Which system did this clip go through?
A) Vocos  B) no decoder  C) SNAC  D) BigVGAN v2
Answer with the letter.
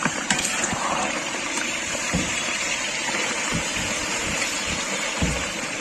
D